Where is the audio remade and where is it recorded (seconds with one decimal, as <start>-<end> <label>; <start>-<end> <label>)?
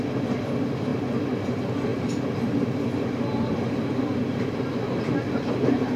0.0-6.0 recorded